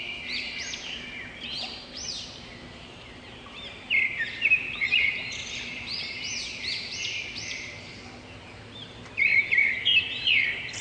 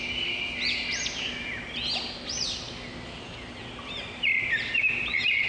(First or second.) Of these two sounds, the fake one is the first